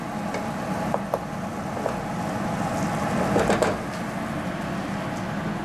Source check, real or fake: real